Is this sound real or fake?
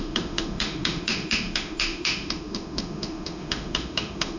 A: fake